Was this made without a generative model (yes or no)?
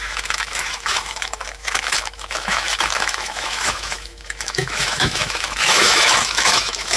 no